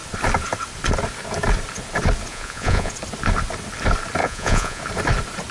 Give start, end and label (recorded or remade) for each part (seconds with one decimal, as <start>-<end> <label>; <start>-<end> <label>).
0.0-2.3 recorded; 2.3-2.9 remade; 2.9-4.2 recorded; 4.2-4.8 remade; 4.8-5.5 recorded